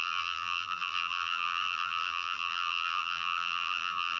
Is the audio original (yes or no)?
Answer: no